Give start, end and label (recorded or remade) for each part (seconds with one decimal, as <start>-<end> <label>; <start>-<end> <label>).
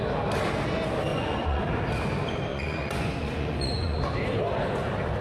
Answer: 0.0-1.1 recorded; 1.1-1.7 remade; 1.7-2.5 recorded; 2.5-4.0 remade; 4.0-5.2 recorded